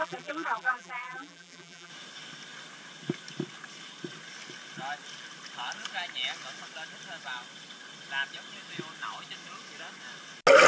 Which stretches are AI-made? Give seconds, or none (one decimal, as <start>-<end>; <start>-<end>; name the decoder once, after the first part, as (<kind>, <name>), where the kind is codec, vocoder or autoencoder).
0.0-1.9 (vocoder, BigVGAN v2)